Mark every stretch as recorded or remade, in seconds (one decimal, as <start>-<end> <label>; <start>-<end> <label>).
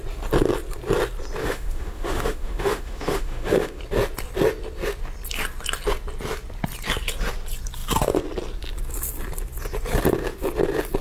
0.0-1.4 recorded; 1.4-3.8 remade; 3.8-11.0 recorded